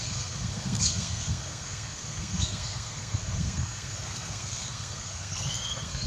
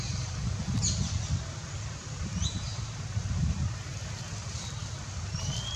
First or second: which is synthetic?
first